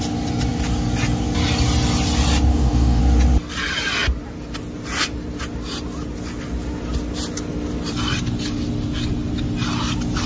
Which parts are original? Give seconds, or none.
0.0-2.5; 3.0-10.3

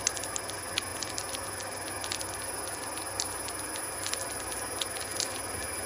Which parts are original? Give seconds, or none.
0.0-5.9

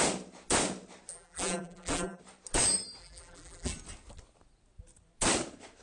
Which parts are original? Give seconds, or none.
0.0-1.1; 2.2-3.0; 3.7-5.8

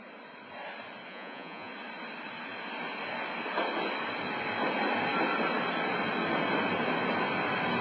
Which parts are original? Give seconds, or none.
0.0-1.1; 1.7-7.8